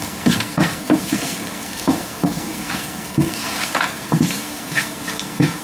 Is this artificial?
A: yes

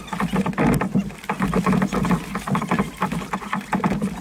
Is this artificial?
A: no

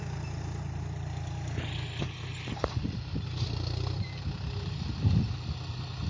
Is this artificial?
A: no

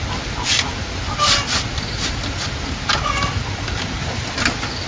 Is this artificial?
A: no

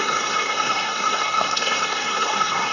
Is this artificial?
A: yes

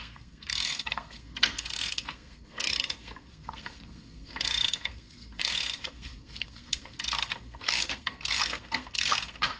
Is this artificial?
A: yes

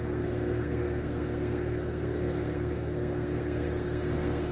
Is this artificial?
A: yes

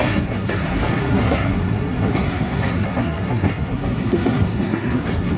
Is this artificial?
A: yes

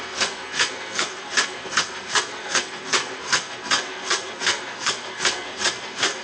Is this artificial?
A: yes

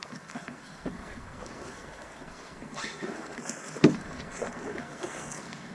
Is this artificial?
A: yes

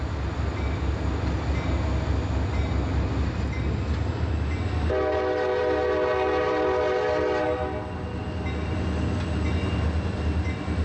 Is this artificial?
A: no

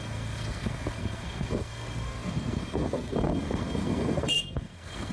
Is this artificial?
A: yes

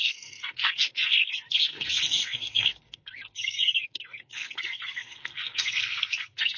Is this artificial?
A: yes